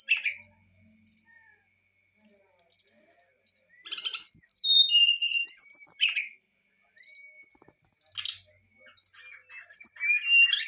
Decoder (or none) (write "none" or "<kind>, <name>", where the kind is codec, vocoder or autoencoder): none